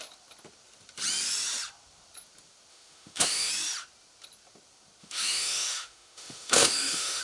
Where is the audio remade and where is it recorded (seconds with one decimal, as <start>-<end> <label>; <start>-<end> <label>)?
0.0-2.7 recorded; 2.7-3.5 remade; 3.5-5.0 recorded; 5.0-7.2 remade